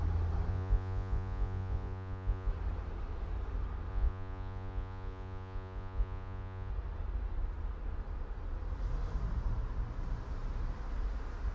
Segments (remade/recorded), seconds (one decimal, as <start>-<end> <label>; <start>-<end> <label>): 0.0-0.5 recorded; 0.5-2.5 remade; 2.5-3.9 recorded; 3.9-6.7 remade; 6.7-11.5 recorded